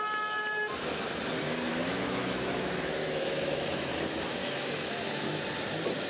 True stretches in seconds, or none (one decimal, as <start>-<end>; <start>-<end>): 0.0-1.7; 5.4-6.1